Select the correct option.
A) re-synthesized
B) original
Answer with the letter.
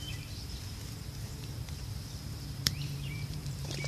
A